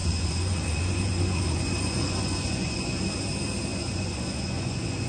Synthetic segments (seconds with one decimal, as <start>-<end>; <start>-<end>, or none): 0.0-3.0; 3.7-5.1